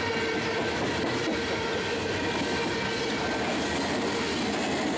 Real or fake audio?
real